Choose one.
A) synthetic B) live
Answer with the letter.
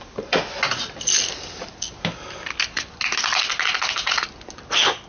B